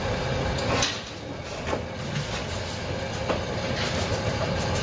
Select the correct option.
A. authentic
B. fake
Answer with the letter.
A